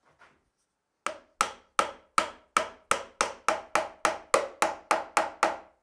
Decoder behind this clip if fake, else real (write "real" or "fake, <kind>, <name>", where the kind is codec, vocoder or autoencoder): real